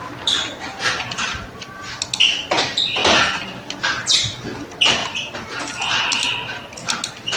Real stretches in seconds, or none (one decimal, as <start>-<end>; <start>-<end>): 0.0-3.0; 3.8-7.4